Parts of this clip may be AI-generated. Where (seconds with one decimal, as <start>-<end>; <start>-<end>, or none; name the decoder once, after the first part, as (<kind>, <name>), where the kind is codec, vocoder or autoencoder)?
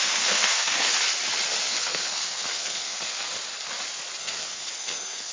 0.0-0.9 (codec, SNAC); 1.6-3.3; 4.2-5.3